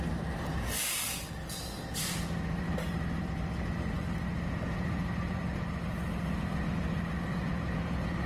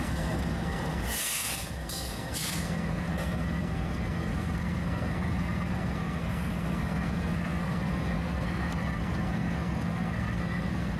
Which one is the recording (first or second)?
first